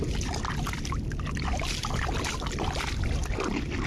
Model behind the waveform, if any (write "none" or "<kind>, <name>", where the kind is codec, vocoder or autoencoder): none